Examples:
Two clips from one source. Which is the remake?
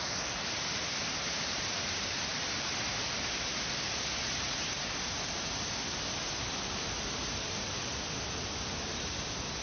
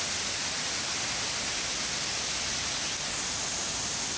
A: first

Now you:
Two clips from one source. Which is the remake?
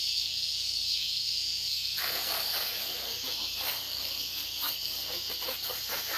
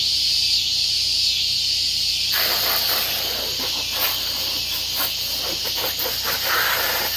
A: first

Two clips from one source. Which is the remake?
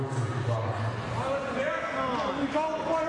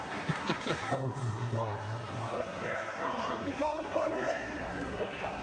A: second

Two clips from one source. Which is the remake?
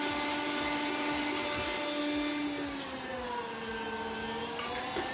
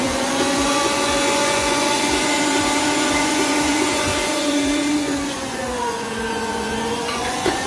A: second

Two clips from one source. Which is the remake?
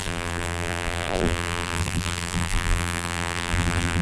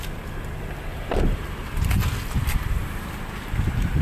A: first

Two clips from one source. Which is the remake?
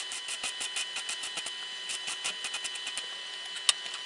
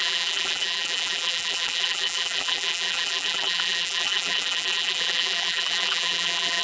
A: second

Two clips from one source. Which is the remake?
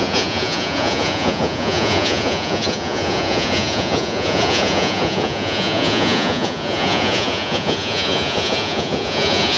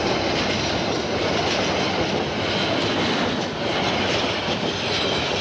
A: first